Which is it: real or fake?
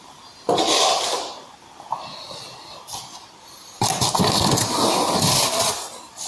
real